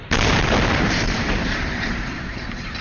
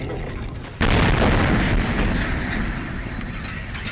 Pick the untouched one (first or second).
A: second